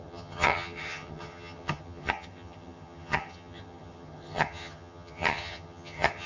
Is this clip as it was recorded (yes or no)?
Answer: no